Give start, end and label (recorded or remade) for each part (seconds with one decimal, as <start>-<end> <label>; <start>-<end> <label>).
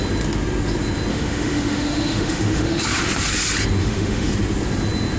0.0-1.1 recorded; 1.1-2.8 remade; 2.8-3.8 recorded; 3.8-4.3 remade; 4.3-5.2 recorded